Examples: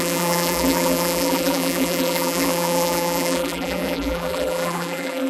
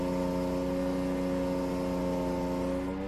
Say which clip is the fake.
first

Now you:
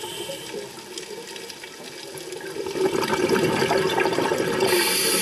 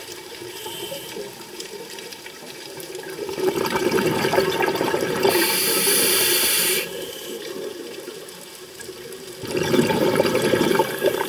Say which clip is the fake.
second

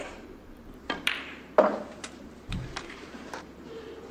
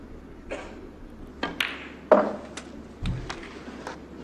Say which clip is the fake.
first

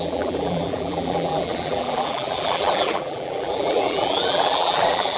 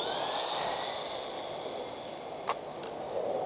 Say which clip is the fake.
first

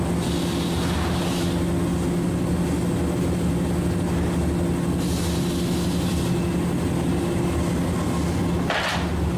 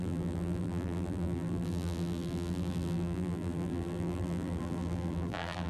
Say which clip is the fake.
second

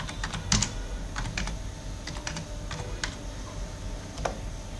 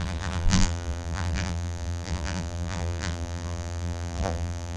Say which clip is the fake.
second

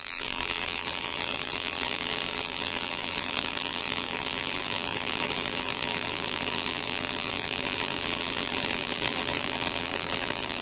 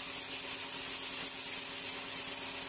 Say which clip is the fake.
first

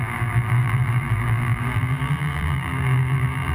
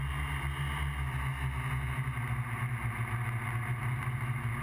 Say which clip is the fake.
first